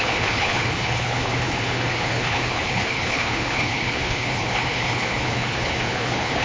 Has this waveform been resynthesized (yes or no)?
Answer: yes